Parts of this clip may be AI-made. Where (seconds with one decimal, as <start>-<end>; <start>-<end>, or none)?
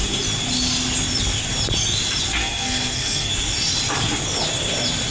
2.4-3.3